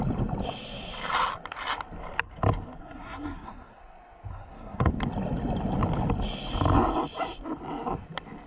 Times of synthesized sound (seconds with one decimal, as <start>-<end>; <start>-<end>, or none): 2.8-3.8; 4.3-4.9